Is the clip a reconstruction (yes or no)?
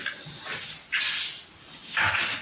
no